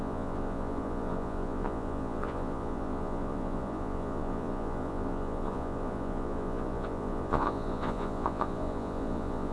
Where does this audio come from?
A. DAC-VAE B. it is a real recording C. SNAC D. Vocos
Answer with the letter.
D